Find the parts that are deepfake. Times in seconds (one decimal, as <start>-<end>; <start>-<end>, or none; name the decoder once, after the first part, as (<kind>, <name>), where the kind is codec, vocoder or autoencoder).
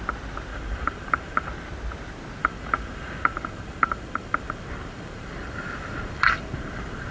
0.5-1.5 (vocoder, BigVGAN v2); 2.4-7.1